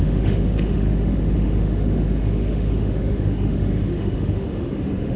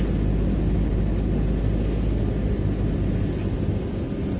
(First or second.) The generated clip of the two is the first